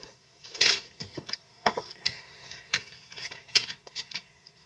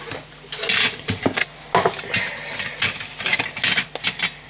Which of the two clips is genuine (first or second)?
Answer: second